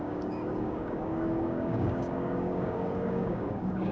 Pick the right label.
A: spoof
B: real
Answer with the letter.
A